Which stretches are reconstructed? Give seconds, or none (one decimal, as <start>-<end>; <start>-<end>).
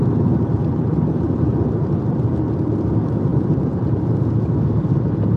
0.6-1.7; 3.3-4.0